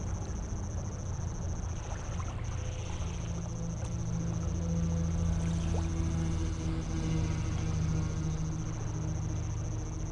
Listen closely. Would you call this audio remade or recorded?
recorded